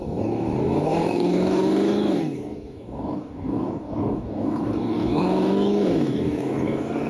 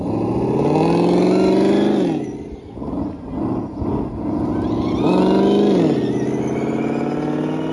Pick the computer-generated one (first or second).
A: first